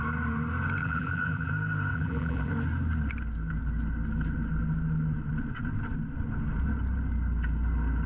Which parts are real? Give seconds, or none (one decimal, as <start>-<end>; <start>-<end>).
0.0-0.8; 1.5-1.9; 2.5-8.1